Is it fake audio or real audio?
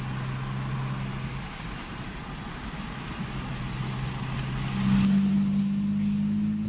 real